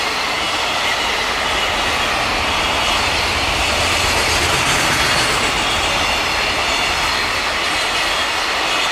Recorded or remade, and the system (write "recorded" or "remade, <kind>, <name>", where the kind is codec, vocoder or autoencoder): recorded